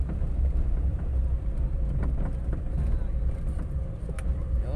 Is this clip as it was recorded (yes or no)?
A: yes